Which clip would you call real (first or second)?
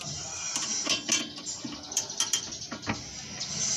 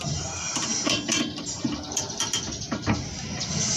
first